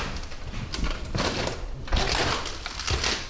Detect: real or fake real